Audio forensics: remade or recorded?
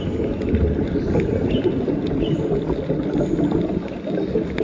recorded